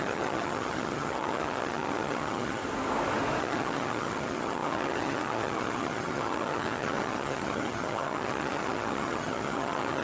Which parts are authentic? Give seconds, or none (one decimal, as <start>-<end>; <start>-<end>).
2.6-3.4

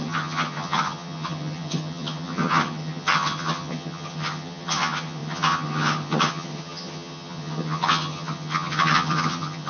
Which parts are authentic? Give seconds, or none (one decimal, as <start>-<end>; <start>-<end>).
none

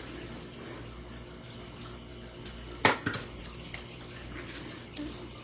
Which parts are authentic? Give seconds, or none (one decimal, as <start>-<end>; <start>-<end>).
0.0-5.4

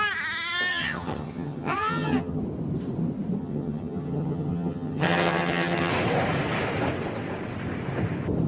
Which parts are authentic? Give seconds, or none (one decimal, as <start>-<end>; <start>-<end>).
0.0-0.7; 2.4-3.4; 5.9-8.5